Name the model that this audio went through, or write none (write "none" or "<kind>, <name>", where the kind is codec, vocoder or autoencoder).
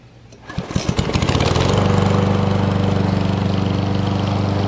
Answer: none